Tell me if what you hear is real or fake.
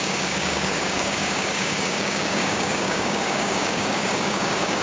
fake